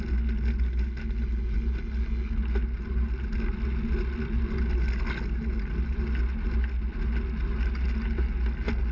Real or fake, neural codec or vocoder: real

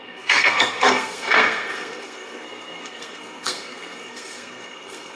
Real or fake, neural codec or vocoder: fake, codec, SNAC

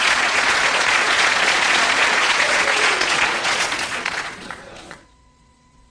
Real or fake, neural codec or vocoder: fake, vocoder, Vocos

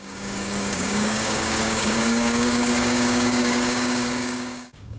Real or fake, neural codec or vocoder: fake, codec, DAC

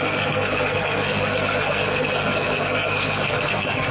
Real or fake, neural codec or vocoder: fake, codec, SNAC